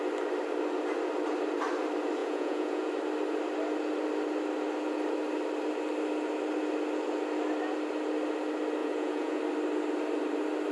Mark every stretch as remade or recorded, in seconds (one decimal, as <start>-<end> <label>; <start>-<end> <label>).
0.0-2.2 recorded; 2.2-2.9 remade; 2.9-8.8 recorded; 8.8-9.4 remade; 9.4-10.7 recorded